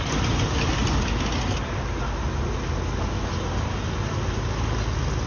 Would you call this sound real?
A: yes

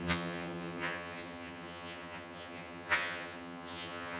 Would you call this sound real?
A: no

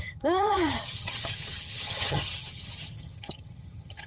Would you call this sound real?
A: no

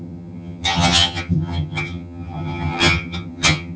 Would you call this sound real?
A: no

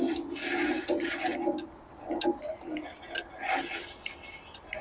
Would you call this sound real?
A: yes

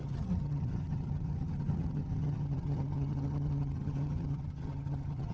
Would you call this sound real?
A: no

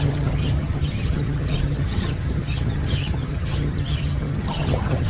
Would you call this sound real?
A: no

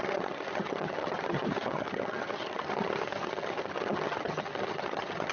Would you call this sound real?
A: no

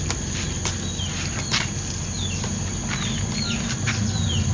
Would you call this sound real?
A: yes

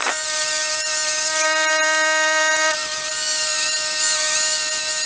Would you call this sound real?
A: yes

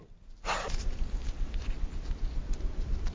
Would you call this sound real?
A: yes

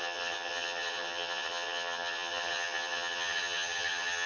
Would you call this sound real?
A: no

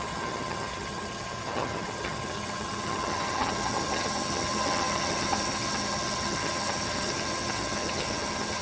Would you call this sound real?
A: no